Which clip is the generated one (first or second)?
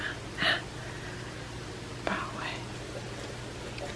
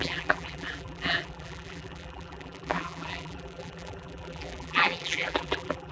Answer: second